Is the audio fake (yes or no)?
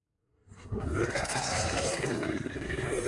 yes